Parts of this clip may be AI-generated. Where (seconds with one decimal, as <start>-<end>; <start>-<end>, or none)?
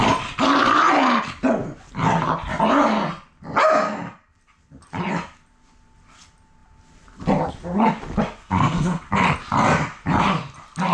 8.4-9.1